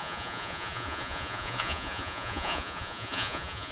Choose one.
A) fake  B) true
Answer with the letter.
A